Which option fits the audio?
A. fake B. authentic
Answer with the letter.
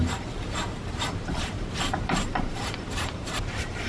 A